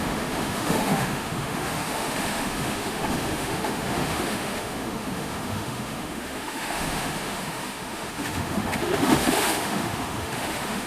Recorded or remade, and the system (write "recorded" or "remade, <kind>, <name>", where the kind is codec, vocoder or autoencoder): remade, autoencoder, DAC-VAE